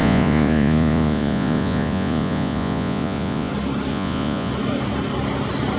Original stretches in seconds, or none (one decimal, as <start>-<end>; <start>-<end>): 3.5-3.9; 4.5-5.8